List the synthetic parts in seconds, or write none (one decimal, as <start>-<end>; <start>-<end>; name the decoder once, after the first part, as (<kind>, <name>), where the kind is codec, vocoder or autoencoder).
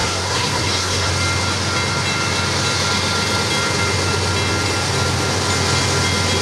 0.0-1.1 (codec, SNAC)